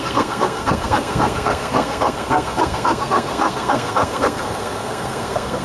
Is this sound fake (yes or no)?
yes